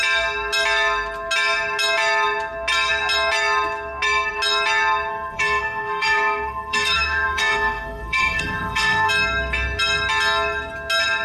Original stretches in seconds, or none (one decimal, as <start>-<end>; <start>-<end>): 0.0-5.1; 9.1-11.2